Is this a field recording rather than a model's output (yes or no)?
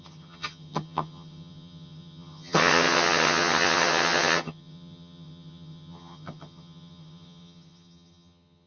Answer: no